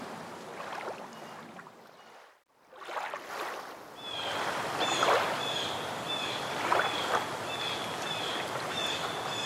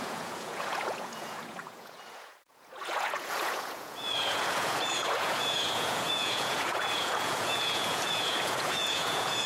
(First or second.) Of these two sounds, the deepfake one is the second